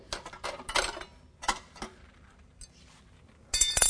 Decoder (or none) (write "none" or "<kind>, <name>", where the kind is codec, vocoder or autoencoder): none